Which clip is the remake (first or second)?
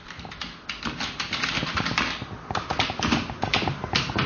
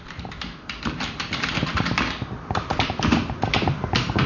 second